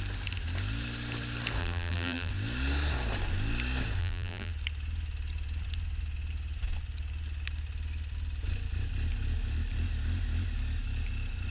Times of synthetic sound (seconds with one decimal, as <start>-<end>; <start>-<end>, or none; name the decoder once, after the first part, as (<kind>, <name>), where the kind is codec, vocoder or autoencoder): 1.6-2.3 (vocoder, BigVGAN v2); 4.0-4.5